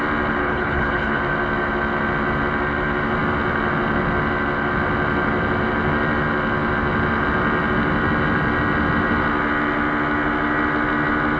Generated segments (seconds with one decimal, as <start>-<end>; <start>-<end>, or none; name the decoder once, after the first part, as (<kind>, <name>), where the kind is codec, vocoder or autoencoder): 0.4-1.2 (codec, HILCodec)